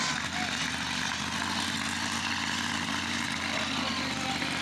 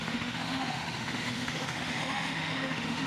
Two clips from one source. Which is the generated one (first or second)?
second